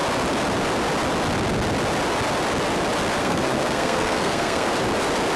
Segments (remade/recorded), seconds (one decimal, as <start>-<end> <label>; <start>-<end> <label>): 0.0-3.2 recorded; 3.2-4.7 remade; 4.7-5.4 recorded